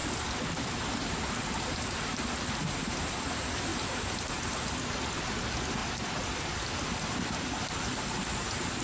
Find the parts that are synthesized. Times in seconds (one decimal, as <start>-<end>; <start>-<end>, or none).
none